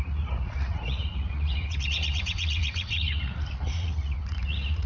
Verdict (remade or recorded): remade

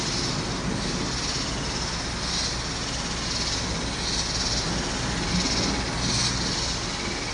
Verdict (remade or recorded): recorded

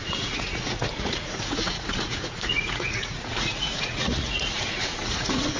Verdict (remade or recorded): remade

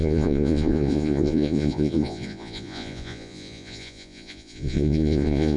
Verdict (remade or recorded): remade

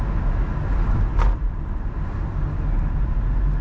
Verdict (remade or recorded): recorded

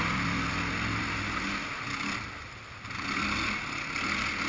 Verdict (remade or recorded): recorded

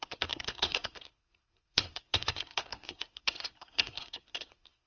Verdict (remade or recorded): remade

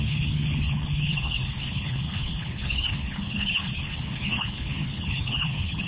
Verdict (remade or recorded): remade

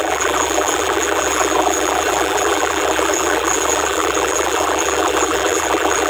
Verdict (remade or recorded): remade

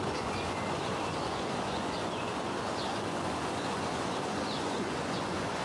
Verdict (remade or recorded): remade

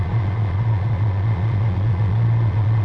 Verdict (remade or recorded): remade